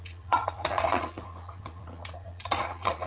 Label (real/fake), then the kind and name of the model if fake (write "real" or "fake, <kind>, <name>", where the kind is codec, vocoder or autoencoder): fake, vocoder, Vocos